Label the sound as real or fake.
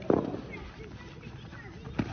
real